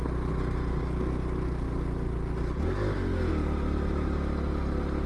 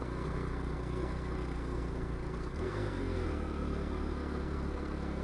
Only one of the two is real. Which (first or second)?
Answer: first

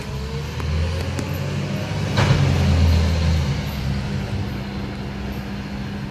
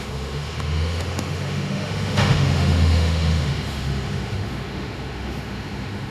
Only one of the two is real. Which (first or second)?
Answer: first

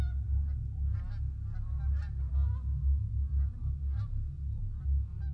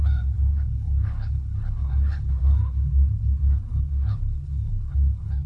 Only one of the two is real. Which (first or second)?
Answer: first